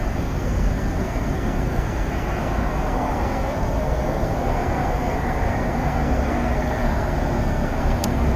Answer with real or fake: fake